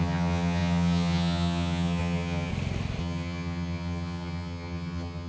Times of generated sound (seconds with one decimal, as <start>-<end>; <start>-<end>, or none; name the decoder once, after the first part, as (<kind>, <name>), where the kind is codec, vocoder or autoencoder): 0.0-2.5 (vocoder, HiFi-GAN); 3.0-5.3